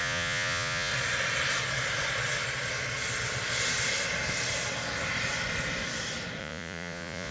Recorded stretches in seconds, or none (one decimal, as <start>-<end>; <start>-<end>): 0.9-6.4